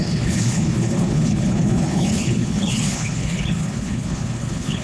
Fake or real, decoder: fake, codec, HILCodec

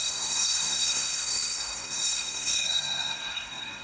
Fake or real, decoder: fake, codec, SNAC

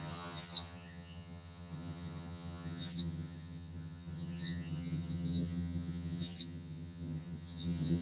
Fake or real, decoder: fake, vocoder, HiFi-GAN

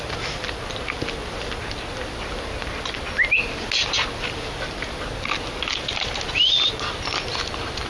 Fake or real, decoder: real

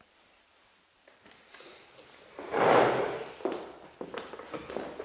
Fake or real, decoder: real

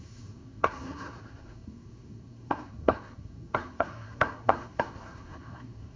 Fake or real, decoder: fake, codec, SNAC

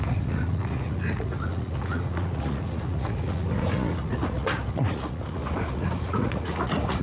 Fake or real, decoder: fake, vocoder, Vocos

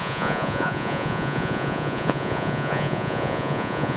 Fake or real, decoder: fake, vocoder, Vocos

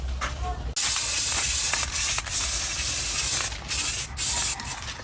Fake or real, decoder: real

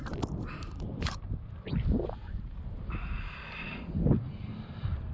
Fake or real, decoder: real